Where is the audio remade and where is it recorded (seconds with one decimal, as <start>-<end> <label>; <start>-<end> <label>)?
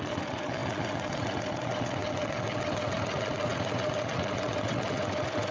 0.0-5.5 remade